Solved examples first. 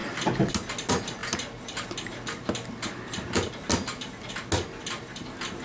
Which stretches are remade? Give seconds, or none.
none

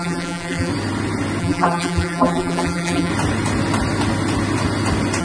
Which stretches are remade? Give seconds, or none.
0.0-0.7 (vocoder, BigVGAN v2); 1.4-3.1

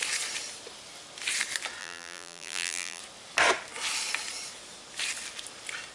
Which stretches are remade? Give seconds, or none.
1.8-3.0 (vocoder, BigVGAN v2)

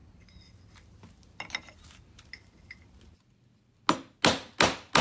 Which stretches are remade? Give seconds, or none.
none